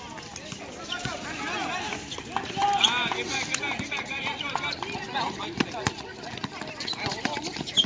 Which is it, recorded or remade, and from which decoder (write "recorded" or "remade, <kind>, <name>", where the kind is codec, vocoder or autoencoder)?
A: recorded